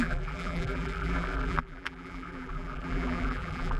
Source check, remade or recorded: remade